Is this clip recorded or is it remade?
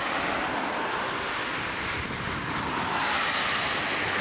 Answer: recorded